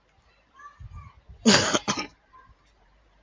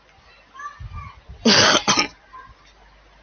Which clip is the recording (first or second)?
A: second